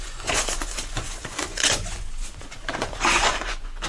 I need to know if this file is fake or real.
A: fake